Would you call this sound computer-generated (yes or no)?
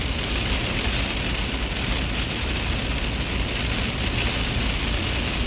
no